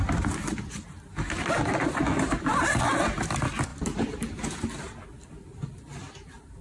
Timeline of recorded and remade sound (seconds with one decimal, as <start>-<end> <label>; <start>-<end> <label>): 0.0-3.7 recorded; 3.7-6.6 remade